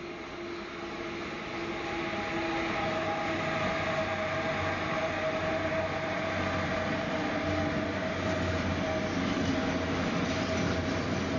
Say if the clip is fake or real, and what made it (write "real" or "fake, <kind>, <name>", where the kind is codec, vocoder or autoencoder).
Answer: real